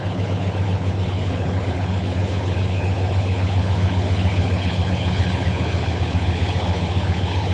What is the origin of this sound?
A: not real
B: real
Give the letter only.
A